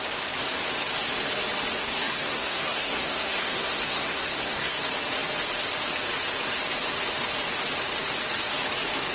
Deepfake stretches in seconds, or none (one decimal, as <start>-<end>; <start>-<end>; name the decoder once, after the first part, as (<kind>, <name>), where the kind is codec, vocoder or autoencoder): 1.8-4.8 (codec, SNAC)